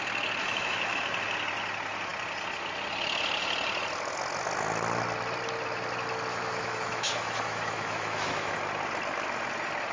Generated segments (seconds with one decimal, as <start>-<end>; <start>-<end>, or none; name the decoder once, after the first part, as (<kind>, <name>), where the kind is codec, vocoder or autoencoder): 0.4-1.0 (autoencoder, DAC-VAE); 6.3-8.6